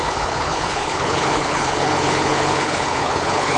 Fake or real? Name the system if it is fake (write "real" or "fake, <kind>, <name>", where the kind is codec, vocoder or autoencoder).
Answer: fake, codec, HILCodec